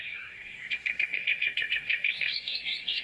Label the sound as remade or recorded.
remade